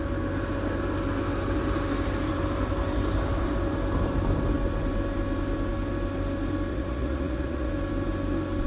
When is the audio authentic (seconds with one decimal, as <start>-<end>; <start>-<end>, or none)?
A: 0.0-6.7; 7.7-8.7